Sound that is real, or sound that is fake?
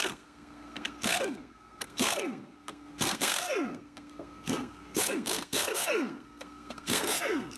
fake